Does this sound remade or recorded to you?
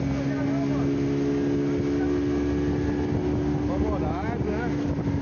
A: recorded